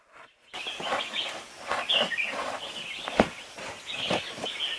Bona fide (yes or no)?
yes